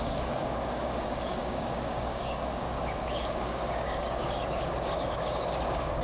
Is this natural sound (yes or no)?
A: no